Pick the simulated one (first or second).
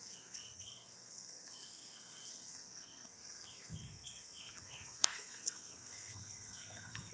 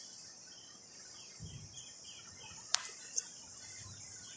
first